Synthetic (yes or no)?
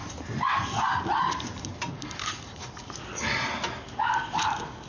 no